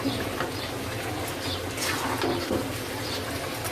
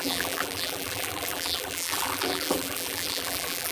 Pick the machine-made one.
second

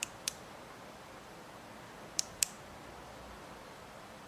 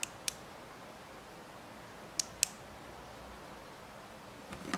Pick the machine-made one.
first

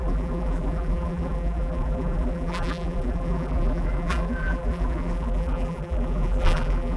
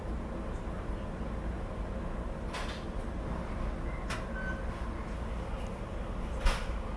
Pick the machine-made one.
first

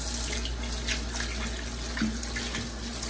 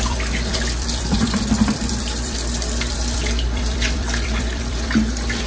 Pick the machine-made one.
second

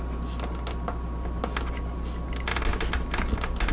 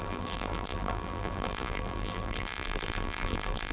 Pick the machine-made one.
second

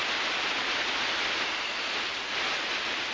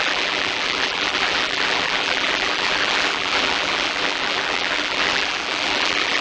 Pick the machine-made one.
second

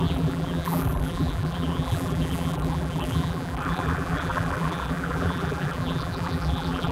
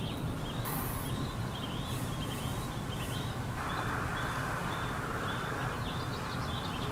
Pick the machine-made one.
first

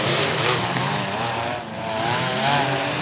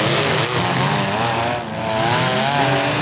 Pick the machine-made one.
first